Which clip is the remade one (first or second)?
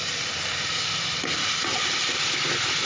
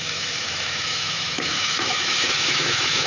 second